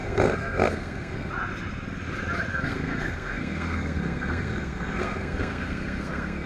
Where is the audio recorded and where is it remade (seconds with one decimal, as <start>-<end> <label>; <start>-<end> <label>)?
0.0-1.3 remade; 1.3-2.5 recorded; 2.5-6.5 remade